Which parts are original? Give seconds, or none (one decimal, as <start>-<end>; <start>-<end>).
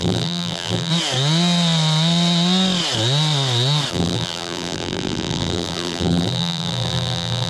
0.9-3.9